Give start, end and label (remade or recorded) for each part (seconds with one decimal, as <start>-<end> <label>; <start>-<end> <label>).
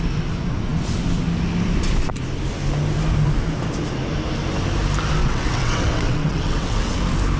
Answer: 0.0-5.2 recorded; 5.2-7.0 remade; 7.0-7.4 recorded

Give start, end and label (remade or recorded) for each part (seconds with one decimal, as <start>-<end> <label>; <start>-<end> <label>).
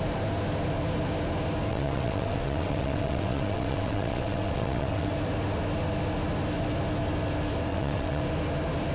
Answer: 0.0-1.7 recorded; 1.7-5.1 remade; 5.1-7.7 recorded; 7.7-8.2 remade; 8.2-8.9 recorded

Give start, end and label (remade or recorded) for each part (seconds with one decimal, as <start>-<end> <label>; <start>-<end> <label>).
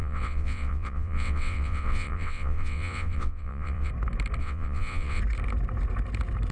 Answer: 0.0-3.9 remade; 3.9-4.4 recorded; 4.4-5.2 remade; 5.2-6.5 recorded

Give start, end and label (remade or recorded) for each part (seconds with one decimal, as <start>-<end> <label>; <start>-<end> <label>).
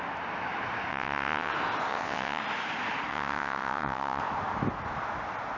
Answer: 0.0-0.9 recorded; 0.9-1.5 remade; 1.5-1.9 recorded; 1.9-2.4 remade; 2.4-3.1 recorded; 3.1-4.2 remade; 4.2-5.6 recorded